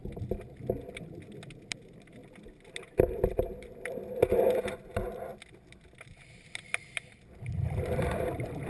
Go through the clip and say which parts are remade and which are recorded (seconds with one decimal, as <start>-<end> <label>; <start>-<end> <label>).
0.0-1.2 remade; 1.2-5.3 recorded; 5.3-8.7 remade